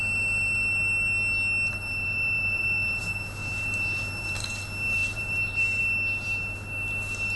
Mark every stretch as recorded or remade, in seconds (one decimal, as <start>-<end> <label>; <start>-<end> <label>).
0.0-1.7 recorded; 1.7-3.0 remade; 3.0-3.4 recorded; 3.4-4.6 remade; 4.6-5.0 recorded; 5.0-5.8 remade; 5.8-7.4 recorded